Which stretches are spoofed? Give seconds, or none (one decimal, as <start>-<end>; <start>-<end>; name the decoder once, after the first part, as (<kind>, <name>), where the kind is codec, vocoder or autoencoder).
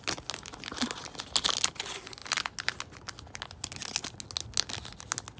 none